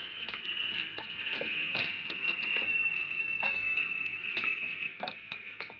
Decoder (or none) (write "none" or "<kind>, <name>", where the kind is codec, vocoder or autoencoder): codec, SNAC